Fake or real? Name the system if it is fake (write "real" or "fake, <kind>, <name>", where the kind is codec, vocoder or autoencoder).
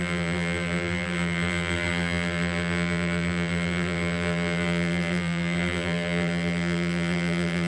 fake, vocoder, BigVGAN v2